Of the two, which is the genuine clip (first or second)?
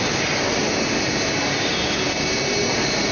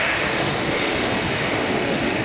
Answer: first